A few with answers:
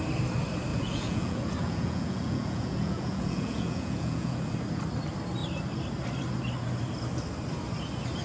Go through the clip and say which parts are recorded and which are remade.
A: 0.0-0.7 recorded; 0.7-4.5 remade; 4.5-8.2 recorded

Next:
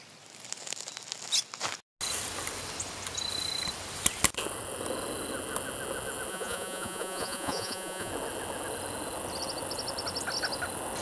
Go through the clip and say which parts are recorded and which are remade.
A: 0.0-6.3 recorded; 6.3-8.1 remade; 8.1-11.0 recorded

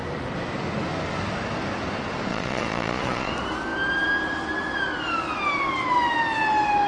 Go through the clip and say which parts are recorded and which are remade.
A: 0.0-2.3 recorded; 2.3-3.3 remade; 3.3-6.9 recorded

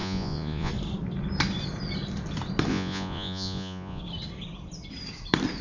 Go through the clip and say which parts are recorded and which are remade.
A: 0.0-0.7 remade; 0.7-2.7 recorded; 2.7-4.0 remade; 4.0-5.6 recorded

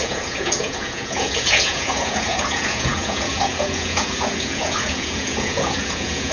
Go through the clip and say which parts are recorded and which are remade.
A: 0.0-6.3 remade